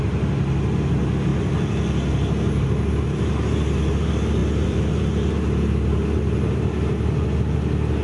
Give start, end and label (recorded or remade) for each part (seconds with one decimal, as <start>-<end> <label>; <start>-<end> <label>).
0.0-4.4 recorded; 4.4-5.3 remade; 5.3-8.0 recorded